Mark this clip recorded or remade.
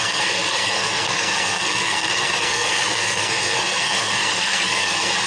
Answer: remade